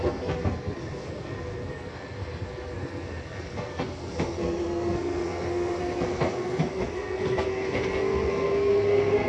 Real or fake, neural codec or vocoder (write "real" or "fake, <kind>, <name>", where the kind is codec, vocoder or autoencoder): fake, codec, SNAC